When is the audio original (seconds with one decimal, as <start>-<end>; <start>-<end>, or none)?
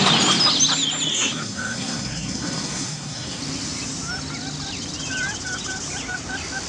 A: 0.0-1.1; 3.4-6.7